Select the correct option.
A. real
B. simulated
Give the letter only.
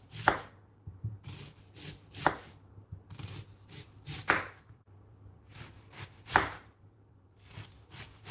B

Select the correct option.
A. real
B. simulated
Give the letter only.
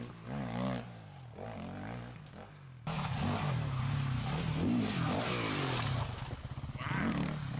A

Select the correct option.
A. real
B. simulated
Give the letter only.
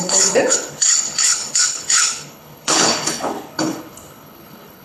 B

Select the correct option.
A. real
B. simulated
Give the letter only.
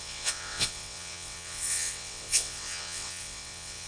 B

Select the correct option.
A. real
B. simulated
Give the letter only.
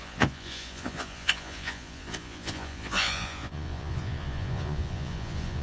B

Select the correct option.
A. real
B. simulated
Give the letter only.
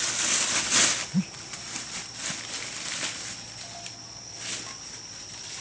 A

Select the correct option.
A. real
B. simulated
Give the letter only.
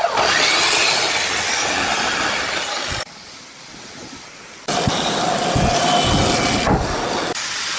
A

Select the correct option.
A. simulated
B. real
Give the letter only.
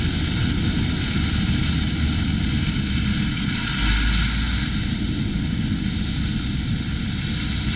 B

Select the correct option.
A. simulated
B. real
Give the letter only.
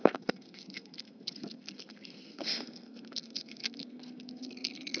A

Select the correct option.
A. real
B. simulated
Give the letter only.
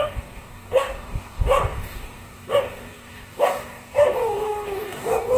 B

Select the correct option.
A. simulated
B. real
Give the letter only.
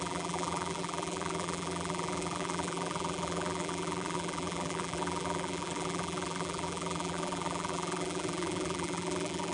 A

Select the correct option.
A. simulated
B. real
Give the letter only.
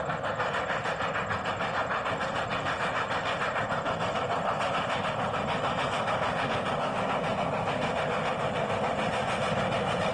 B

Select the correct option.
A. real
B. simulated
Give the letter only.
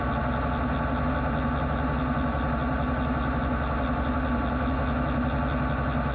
A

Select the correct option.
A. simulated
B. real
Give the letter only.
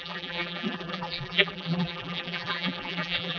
A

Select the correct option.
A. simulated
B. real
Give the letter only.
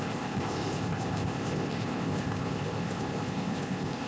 A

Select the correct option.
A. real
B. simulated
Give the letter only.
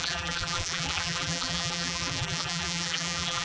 B